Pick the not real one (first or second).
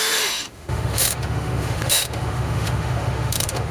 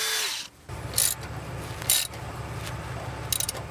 first